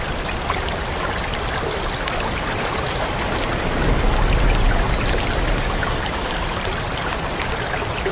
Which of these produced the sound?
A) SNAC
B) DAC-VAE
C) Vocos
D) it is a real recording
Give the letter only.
D